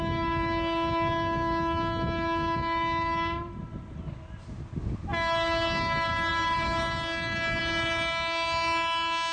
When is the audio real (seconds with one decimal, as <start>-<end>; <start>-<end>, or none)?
0.0-9.3